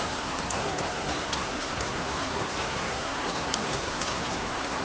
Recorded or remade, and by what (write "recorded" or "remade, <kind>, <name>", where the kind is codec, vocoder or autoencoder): remade, codec, SNAC